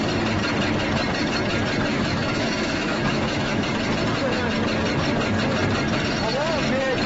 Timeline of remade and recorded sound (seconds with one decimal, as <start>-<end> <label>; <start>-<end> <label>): 0.0-1.9 recorded; 1.9-3.7 remade; 3.7-7.1 recorded

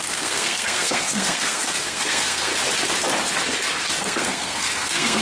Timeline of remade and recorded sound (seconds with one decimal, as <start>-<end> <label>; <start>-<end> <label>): 0.0-2.5 remade; 2.5-4.0 recorded; 4.0-5.2 remade

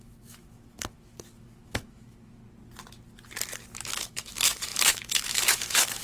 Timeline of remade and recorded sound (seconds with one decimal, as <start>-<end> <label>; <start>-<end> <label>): 0.0-2.4 remade; 2.4-3.9 recorded; 3.9-6.0 remade

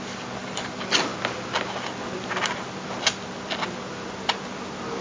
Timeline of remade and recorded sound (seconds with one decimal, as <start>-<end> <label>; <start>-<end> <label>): 0.0-5.0 recorded

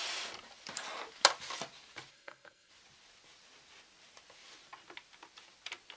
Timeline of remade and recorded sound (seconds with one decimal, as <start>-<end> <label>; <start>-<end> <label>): 0.0-2.1 recorded; 2.1-2.7 remade; 2.7-6.0 recorded